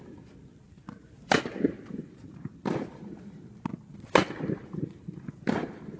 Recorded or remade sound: recorded